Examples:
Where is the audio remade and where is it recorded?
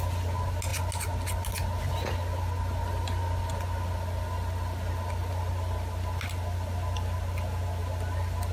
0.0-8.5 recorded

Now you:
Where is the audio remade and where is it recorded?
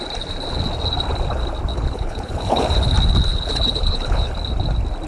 0.0-1.7 recorded; 1.7-2.6 remade; 2.6-3.3 recorded; 3.3-4.3 remade; 4.3-5.1 recorded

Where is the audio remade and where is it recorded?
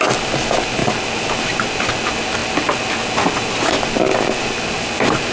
0.0-5.3 recorded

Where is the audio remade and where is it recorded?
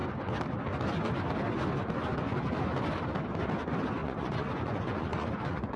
0.0-4.0 recorded; 4.0-5.8 remade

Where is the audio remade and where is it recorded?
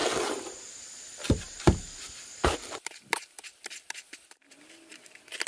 0.0-5.5 recorded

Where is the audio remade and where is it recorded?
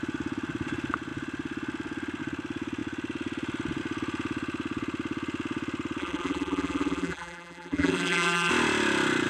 0.0-6.0 recorded; 6.0-8.5 remade; 8.5-9.3 recorded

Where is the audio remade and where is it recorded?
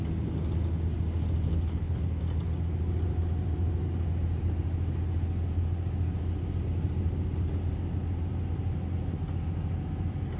0.0-1.5 recorded; 1.5-2.2 remade; 2.2-10.4 recorded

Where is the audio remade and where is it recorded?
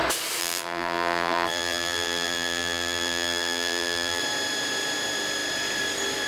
0.0-0.4 recorded; 0.4-4.2 remade; 4.2-6.3 recorded